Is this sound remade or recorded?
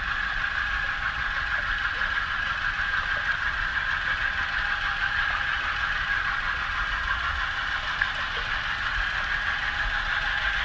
recorded